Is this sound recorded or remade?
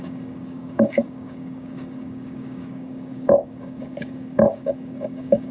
remade